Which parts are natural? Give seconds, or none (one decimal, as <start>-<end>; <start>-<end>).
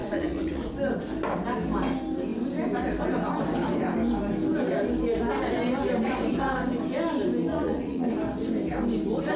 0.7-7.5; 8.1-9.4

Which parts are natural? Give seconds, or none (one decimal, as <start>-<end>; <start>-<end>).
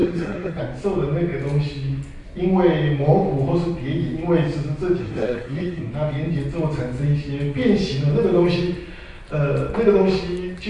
0.6-5.0; 5.9-10.7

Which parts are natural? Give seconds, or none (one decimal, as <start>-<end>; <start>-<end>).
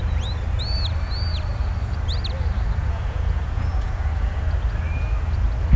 0.0-2.8; 4.4-5.8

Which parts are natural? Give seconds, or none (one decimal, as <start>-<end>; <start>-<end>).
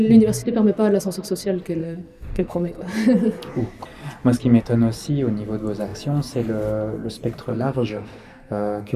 0.0-1.8; 2.8-7.5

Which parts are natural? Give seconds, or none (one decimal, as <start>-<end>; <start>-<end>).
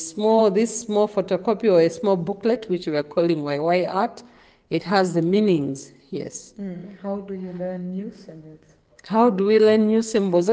0.4-2.5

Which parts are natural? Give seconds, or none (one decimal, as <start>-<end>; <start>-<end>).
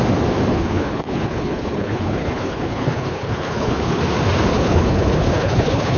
0.0-0.5; 4.0-4.5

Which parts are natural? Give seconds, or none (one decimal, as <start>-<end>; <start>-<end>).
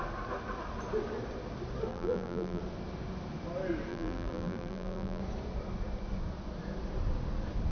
0.0-1.9; 2.6-3.9; 5.2-7.7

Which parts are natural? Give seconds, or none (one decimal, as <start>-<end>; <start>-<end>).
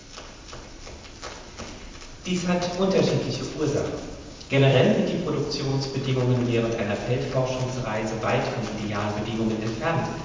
0.0-4.2; 4.8-10.2